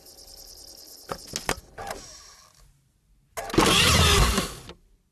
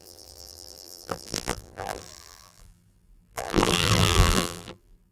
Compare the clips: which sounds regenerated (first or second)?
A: second